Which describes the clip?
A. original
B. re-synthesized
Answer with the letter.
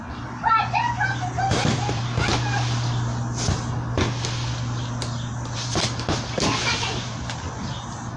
A